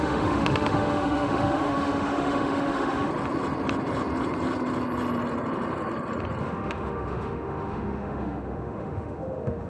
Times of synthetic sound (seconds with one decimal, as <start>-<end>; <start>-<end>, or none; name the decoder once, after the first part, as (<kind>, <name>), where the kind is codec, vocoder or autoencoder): 0.0-3.1 (autoencoder, DAC-VAE); 6.4-9.7

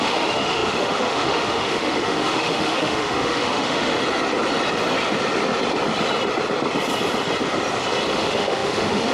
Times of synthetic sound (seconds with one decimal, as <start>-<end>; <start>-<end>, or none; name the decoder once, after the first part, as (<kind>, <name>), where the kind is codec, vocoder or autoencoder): 0.0-4.0 (autoencoder, DAC-VAE); 8.1-9.1